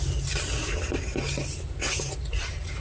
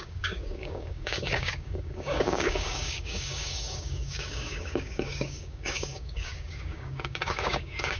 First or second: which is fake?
second